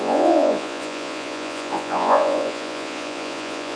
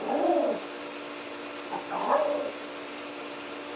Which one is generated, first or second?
first